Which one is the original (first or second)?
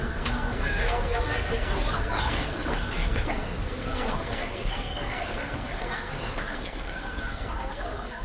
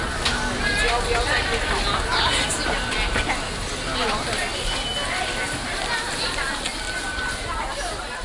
second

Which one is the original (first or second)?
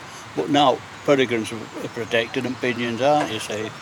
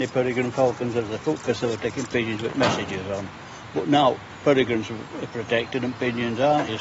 second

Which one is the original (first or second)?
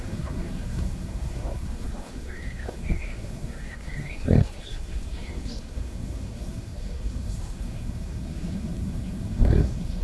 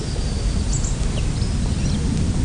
second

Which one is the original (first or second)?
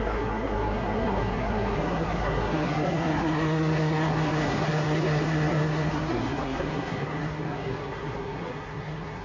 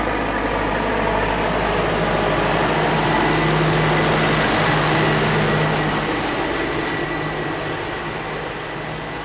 second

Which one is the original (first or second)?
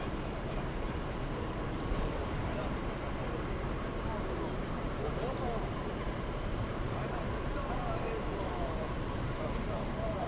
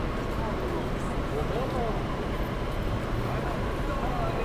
second